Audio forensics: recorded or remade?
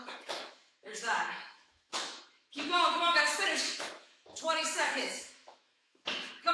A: remade